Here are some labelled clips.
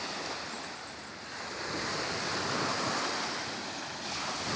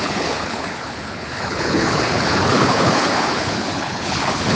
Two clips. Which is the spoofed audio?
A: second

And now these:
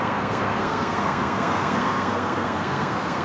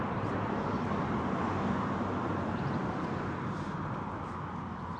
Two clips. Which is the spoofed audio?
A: first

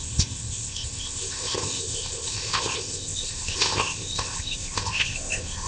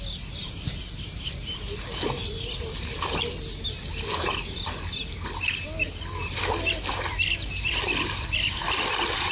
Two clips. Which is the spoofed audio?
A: first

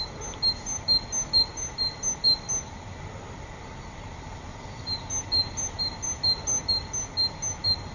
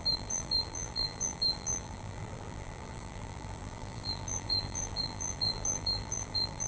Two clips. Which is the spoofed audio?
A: second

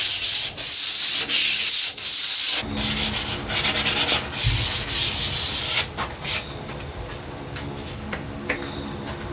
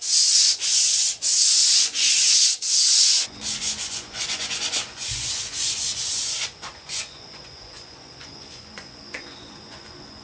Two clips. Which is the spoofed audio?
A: second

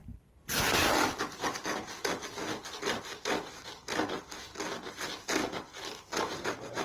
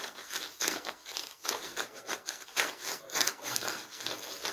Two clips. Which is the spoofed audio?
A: second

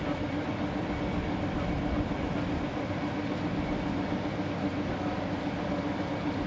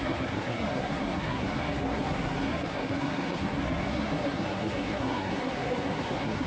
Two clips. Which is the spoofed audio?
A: second